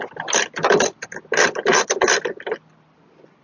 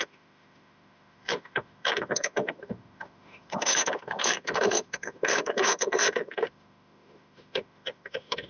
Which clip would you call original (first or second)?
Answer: first